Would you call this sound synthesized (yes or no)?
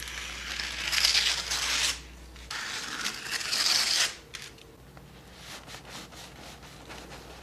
no